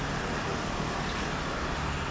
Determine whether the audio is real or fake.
real